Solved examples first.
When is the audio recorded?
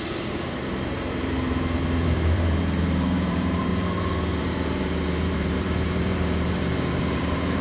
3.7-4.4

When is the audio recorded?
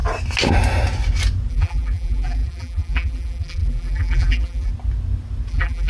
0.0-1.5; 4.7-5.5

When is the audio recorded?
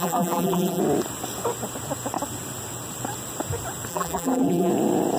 0.8-3.9; 4.7-5.2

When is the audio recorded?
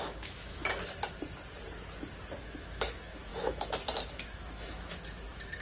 0.6-2.4